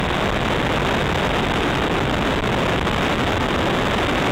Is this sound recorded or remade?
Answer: recorded